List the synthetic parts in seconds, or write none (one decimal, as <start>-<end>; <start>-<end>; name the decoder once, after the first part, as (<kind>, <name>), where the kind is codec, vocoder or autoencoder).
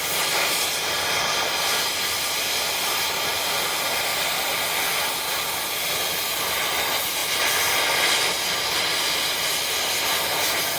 none